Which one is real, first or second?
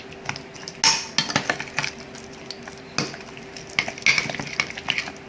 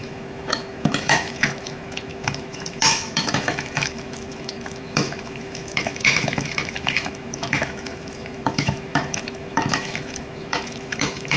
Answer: first